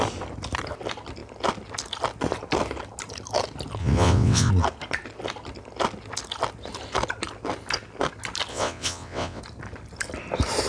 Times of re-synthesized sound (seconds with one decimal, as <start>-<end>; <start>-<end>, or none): 3.8-4.5; 8.5-9.4